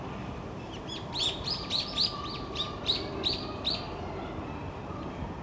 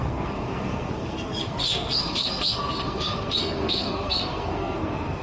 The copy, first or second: second